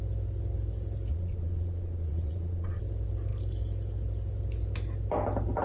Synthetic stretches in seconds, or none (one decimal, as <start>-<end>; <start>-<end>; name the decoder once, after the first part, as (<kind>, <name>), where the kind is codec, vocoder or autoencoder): 1.1-2.8 (vocoder, Vocos)